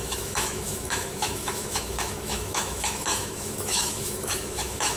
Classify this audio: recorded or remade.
remade